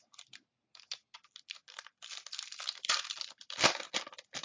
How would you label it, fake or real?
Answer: real